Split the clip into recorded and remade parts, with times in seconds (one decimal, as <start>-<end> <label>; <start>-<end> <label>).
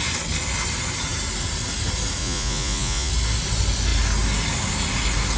0.0-2.2 recorded; 2.2-3.1 remade; 3.1-5.4 recorded